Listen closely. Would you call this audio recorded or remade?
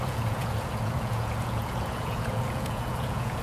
remade